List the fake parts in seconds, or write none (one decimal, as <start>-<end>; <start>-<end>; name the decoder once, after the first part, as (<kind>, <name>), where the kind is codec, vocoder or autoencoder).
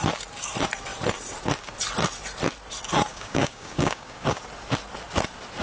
3.1-4.4 (codec, DAC)